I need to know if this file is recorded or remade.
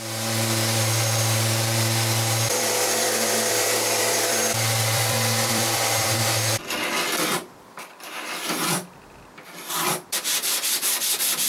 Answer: remade